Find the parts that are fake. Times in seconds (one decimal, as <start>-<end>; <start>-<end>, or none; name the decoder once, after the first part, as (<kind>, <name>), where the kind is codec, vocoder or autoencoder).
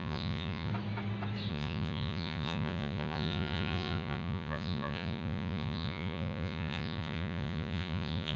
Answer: 0.0-0.7 (vocoder, Vocos); 1.5-8.4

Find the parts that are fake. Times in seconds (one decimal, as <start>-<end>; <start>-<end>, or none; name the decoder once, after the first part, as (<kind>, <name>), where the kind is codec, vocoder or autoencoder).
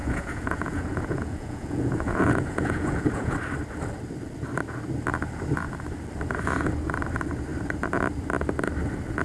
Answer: 0.0-3.4 (vocoder, Vocos)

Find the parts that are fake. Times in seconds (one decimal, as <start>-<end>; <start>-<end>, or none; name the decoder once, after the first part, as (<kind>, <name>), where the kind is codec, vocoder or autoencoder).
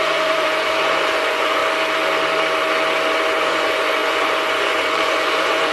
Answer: 0.0-1.6 (vocoder, Vocos); 3.4-5.7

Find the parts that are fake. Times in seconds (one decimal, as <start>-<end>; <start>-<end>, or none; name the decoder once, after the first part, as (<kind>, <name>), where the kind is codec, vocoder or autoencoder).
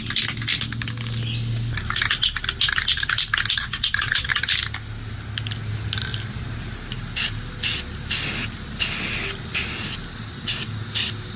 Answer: 3.6-4.3 (vocoder, Vocos)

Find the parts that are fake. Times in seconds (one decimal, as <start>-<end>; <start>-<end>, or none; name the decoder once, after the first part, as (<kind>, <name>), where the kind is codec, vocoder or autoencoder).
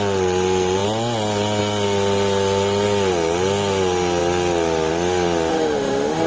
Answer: 5.5-6.3 (autoencoder, DAC-VAE)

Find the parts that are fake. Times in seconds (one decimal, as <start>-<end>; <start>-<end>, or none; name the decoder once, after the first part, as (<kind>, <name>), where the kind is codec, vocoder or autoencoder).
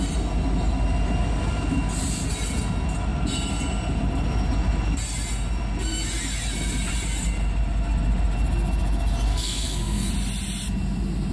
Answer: 9.3-10.1 (codec, SNAC)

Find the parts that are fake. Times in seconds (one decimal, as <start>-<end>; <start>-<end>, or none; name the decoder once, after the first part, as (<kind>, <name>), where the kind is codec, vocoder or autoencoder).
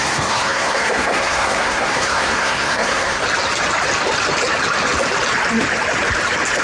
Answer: 0.0-3.2 (codec, SNAC)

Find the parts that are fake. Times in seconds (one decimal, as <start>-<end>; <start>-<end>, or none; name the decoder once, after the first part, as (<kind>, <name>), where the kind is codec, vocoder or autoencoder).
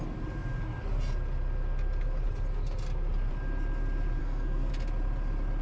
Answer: 4.2-4.7 (codec, SNAC)